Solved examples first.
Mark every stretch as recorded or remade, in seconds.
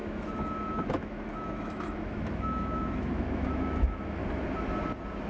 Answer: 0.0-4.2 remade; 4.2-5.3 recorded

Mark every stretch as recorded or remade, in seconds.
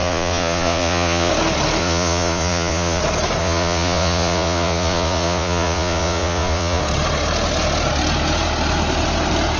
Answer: 0.0-1.3 remade; 1.3-1.8 recorded; 1.8-3.0 remade; 3.0-3.4 recorded; 3.4-6.8 remade; 6.8-9.6 recorded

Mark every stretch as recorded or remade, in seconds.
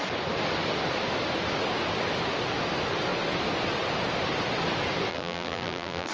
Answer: 0.0-5.1 recorded; 5.1-6.1 remade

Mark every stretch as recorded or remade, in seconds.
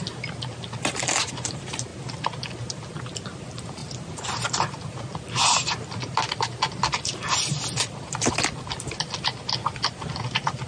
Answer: 0.0-10.7 recorded